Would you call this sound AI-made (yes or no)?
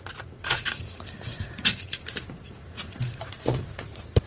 yes